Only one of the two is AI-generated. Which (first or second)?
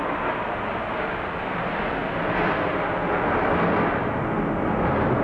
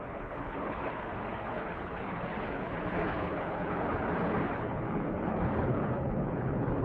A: second